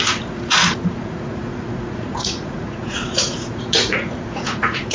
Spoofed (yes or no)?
yes